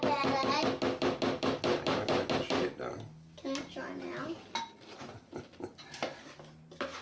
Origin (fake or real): real